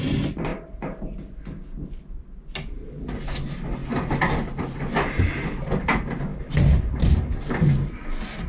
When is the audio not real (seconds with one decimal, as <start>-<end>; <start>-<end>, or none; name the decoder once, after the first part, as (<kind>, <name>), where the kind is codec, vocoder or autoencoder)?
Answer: none